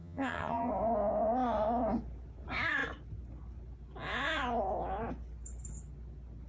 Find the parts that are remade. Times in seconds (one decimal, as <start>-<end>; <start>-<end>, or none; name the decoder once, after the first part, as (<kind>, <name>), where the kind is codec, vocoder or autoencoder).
0.0-0.7 (vocoder, HiFi-GAN)